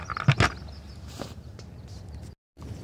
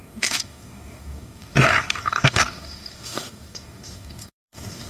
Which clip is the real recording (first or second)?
first